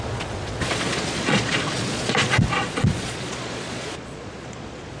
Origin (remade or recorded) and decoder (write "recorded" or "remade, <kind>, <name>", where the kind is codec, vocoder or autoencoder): remade, vocoder, Vocos